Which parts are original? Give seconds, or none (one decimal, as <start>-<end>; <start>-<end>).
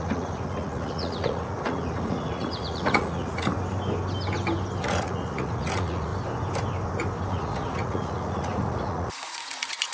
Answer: 3.5-4.8; 6.1-7.3